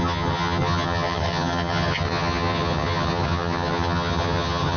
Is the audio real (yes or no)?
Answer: no